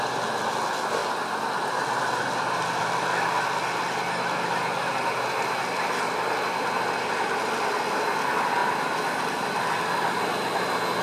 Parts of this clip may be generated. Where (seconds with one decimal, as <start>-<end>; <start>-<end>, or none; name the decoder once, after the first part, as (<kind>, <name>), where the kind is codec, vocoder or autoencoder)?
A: 1.0-3.3 (vocoder, BigVGAN v2); 8.6-9.9